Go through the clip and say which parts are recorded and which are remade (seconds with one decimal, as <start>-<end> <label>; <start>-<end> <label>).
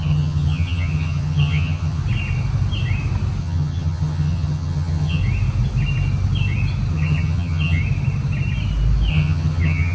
0.0-2.0 remade; 2.0-3.4 recorded; 3.4-5.2 remade; 5.2-6.9 recorded; 6.9-7.8 remade; 7.8-9.1 recorded; 9.1-9.9 remade